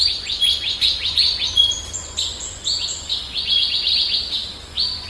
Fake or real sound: fake